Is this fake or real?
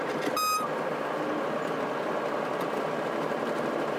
real